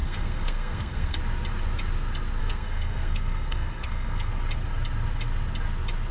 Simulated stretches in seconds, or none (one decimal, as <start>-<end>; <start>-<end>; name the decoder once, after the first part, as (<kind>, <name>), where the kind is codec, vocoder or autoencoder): 0.0-1.2 (codec, SNAC); 2.4-4.3